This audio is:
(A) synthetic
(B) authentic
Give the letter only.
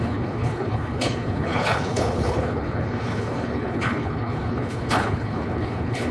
A